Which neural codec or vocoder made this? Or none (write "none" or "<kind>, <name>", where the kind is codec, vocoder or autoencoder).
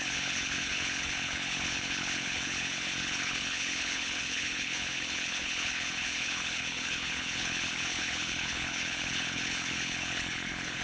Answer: codec, HILCodec